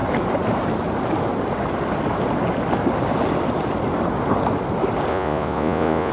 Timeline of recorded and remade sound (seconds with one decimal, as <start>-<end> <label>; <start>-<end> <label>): 0.0-5.1 recorded; 5.1-6.1 remade

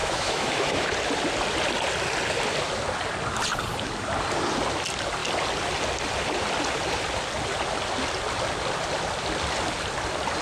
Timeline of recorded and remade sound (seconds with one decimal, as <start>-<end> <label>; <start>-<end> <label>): 0.0-0.9 remade; 0.9-10.4 recorded

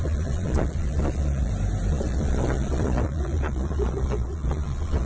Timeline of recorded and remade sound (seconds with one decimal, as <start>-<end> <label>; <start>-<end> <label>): 0.0-1.5 remade; 1.5-1.9 recorded; 1.9-5.1 remade

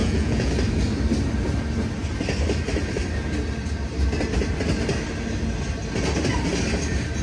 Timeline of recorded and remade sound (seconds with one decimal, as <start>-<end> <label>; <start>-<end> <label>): 0.0-0.5 remade; 0.5-7.2 recorded

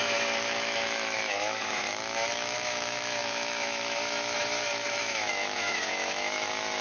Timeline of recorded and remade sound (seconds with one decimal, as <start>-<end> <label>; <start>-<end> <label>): 0.0-6.8 remade

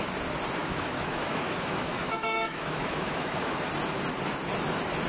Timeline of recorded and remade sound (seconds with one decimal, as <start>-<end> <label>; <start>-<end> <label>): 0.0-0.6 recorded; 0.6-3.7 remade; 3.7-5.1 recorded